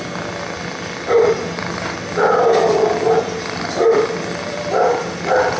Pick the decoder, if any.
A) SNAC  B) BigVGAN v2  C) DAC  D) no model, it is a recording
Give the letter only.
D